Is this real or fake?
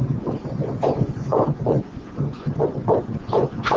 fake